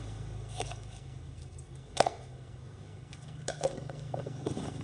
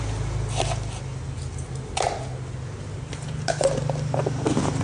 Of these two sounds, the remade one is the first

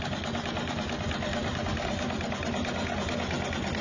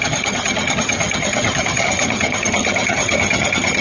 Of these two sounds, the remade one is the second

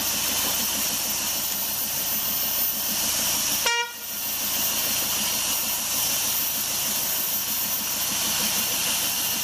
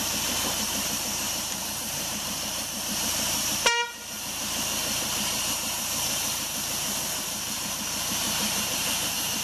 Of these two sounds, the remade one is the second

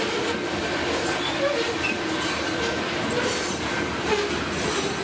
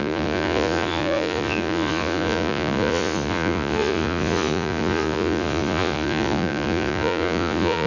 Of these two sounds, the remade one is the second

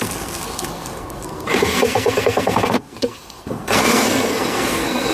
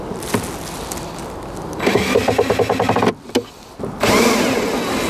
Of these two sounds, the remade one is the first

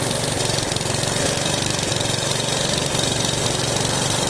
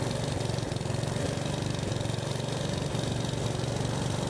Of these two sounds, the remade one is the first